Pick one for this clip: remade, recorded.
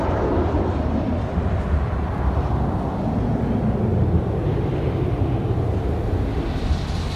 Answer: recorded